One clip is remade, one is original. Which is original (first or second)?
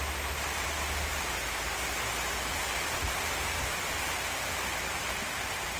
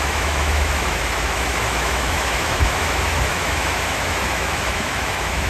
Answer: first